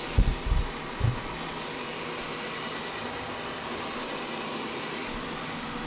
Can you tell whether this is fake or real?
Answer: real